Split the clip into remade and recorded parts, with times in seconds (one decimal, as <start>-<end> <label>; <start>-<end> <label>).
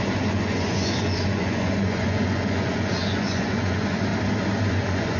0.0-4.1 remade; 4.1-4.7 recorded; 4.7-5.2 remade